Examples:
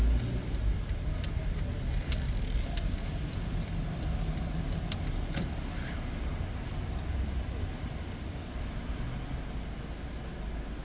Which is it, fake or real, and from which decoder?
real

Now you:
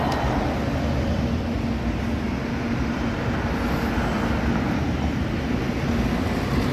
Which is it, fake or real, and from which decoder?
real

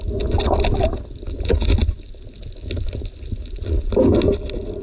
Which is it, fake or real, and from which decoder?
real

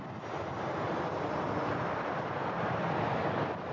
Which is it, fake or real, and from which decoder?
real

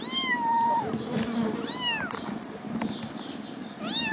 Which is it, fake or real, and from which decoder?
real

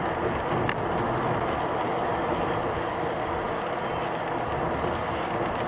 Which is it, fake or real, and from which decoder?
real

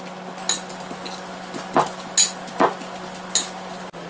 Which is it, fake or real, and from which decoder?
real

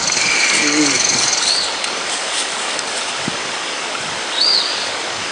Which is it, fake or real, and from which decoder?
fake, codec, DAC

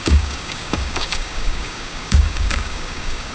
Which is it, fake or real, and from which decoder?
fake, codec, DAC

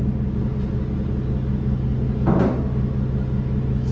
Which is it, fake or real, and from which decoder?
real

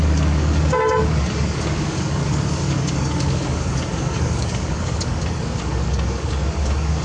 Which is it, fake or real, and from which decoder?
fake, codec, DAC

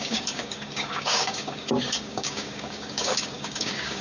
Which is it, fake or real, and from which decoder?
fake, codec, DAC